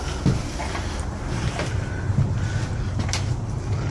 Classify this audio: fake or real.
real